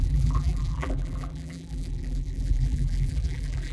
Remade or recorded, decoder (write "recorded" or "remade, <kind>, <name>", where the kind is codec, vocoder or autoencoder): remade, vocoder, BigVGAN v2